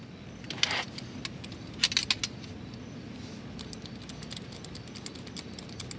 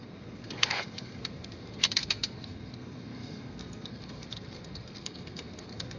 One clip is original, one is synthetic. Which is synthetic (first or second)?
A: second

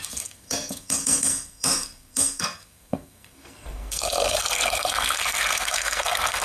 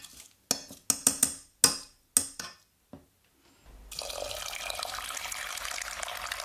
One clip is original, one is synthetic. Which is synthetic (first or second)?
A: first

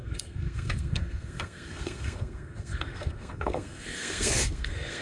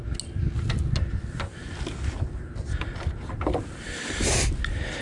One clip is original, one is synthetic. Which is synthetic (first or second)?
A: first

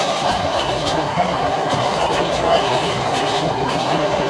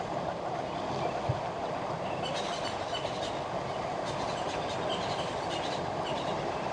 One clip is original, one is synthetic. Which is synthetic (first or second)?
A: first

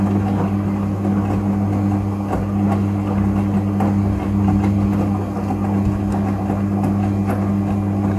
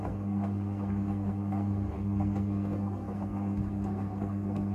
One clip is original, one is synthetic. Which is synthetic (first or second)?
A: second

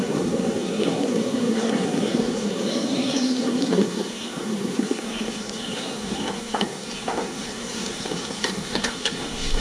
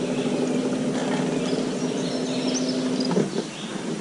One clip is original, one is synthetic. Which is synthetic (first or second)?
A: first